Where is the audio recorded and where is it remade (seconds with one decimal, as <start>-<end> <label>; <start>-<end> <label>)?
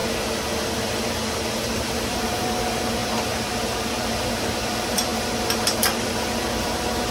0.0-1.1 recorded; 1.1-3.0 remade; 3.0-4.3 recorded; 4.3-5.1 remade; 5.1-5.6 recorded; 5.6-7.1 remade